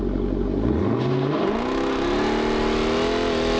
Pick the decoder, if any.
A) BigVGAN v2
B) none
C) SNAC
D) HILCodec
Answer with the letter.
B